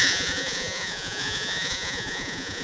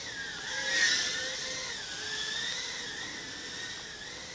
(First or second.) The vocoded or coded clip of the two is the first